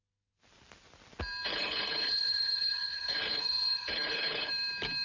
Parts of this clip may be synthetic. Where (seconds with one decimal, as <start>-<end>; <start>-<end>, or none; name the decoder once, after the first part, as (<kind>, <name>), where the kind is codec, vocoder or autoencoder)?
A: 1.5-4.5 (codec, HILCodec)